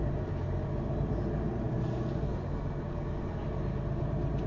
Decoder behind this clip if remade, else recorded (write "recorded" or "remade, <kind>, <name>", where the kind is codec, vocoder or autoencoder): recorded